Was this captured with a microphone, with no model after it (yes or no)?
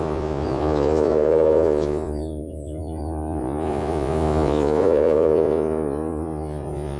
no